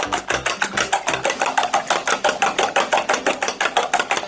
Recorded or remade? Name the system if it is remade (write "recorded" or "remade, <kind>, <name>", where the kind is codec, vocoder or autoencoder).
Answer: recorded